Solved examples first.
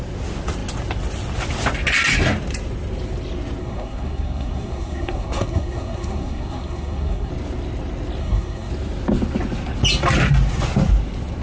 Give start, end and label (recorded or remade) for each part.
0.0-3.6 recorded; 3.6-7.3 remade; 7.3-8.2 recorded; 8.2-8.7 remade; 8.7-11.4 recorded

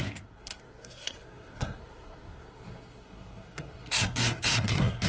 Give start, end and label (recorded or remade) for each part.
0.0-5.1 remade

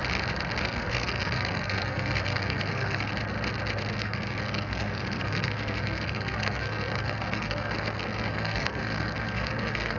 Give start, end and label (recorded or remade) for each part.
0.0-0.6 recorded; 0.6-3.1 remade; 3.1-3.9 recorded; 3.9-10.0 remade

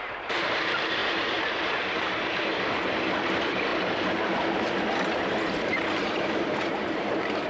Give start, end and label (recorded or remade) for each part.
0.0-2.5 remade; 2.5-3.2 recorded; 3.2-7.5 remade